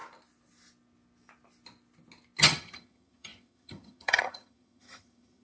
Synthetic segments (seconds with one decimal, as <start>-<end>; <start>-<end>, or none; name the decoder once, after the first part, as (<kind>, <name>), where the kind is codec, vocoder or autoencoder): 2.4-5.4 (vocoder, HiFi-GAN)